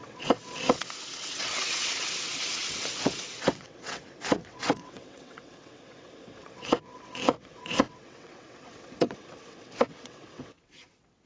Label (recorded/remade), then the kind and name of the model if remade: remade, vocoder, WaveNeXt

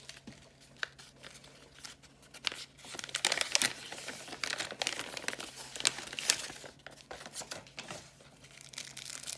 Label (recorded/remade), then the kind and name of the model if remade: recorded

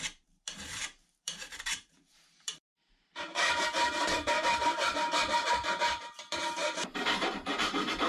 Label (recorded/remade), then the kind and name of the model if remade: remade, vocoder, BigVGAN v2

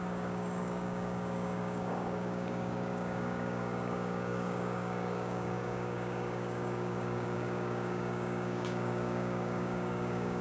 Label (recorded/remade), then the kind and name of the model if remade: remade, codec, DAC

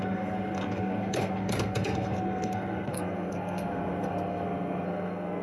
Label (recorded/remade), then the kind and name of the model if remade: remade, codec, SNAC